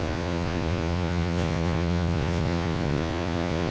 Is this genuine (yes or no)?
no